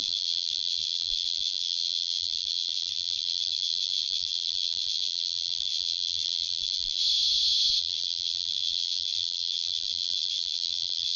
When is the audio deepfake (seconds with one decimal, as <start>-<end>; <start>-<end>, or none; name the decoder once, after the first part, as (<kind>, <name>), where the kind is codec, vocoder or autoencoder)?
0.0-7.0 (vocoder, BigVGAN v2); 7.8-11.2